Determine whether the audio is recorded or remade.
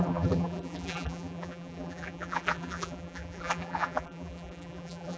remade